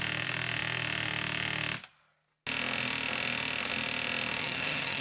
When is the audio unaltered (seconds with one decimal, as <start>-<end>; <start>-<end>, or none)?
0.0-4.4